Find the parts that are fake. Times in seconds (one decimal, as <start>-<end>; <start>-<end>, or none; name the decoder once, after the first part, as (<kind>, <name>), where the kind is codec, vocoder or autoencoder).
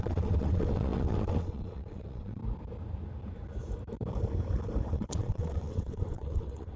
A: 0.0-2.4 (vocoder, WaveNeXt); 4.9-6.8